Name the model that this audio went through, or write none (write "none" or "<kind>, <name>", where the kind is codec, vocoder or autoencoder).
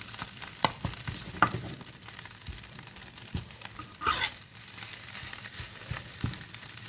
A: vocoder, BigVGAN v2